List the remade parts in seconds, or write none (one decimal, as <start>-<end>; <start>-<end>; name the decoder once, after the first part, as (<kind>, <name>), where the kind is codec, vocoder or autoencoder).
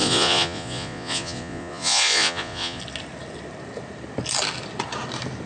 0.0-2.8 (vocoder, Vocos)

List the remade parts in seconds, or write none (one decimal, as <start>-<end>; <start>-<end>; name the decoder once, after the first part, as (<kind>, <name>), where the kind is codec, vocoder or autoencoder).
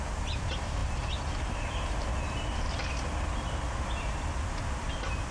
none